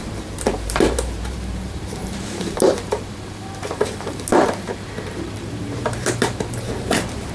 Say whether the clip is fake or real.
fake